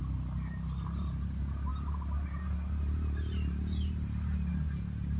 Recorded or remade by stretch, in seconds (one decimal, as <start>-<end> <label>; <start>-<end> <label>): 0.0-5.2 recorded